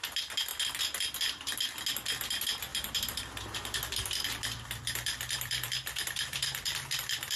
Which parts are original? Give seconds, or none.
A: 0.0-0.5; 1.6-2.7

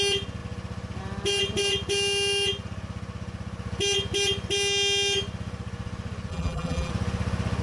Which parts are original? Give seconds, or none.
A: 0.0-6.3; 6.9-7.6

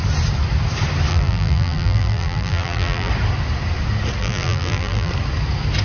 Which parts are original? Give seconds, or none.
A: 0.0-1.1; 3.1-4.2; 5.1-5.8